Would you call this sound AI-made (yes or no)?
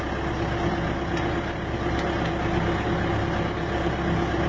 no